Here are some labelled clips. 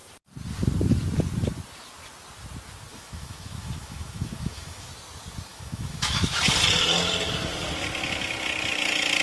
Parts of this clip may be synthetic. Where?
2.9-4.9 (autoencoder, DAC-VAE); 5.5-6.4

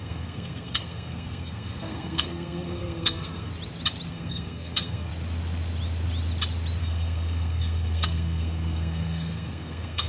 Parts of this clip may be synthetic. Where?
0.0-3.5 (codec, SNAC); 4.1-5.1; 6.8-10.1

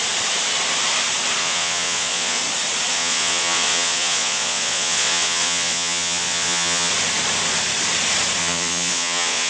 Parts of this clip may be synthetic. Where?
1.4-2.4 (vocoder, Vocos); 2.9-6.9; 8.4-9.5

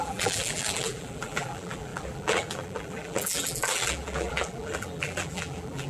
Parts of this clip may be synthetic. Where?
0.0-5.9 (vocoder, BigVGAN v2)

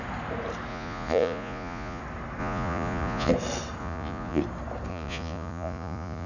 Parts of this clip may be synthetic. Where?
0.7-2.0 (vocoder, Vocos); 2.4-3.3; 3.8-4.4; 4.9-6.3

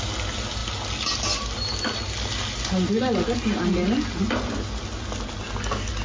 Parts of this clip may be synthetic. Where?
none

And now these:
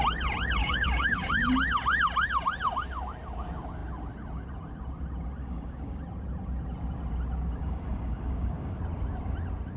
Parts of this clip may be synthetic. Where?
0.6-1.5 (codec, DAC); 5.4-6.0; 7.6-8.8

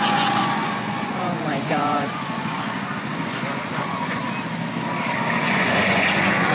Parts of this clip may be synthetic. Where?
0.0-4.2 (vocoder, Vocos); 5.4-6.5